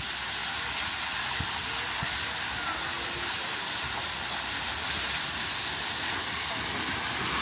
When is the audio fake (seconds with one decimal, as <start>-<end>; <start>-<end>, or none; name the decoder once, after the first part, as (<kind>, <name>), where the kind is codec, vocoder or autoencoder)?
none